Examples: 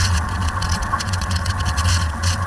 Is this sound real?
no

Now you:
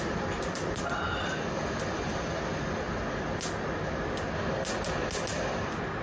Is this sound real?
yes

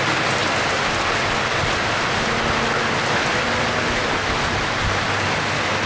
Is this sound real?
yes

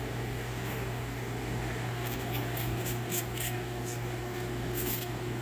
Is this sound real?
no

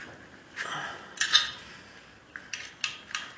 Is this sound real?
yes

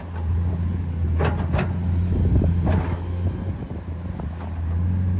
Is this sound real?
yes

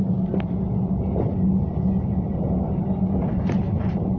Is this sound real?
yes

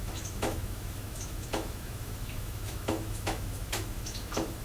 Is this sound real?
no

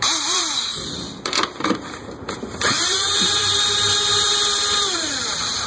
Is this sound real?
no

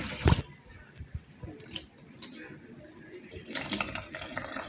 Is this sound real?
no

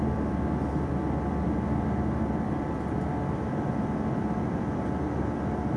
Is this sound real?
no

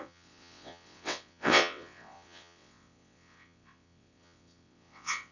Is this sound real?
no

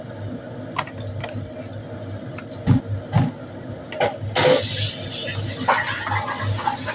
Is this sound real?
yes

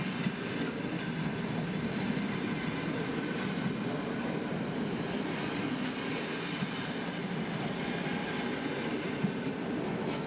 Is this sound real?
yes